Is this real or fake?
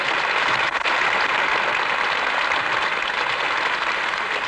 real